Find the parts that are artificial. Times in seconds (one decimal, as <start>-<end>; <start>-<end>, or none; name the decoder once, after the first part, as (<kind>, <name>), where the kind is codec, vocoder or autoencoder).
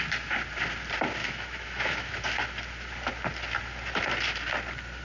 1.2-2.1 (autoencoder, DAC-VAE)